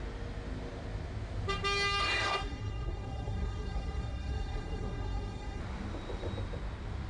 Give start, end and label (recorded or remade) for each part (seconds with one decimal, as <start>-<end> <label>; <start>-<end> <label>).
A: 0.0-2.0 recorded; 2.0-5.6 remade; 5.6-7.1 recorded